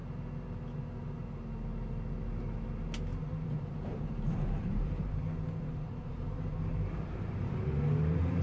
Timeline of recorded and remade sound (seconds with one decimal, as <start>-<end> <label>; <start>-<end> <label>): 0.0-3.1 recorded; 3.1-7.5 remade; 7.5-8.4 recorded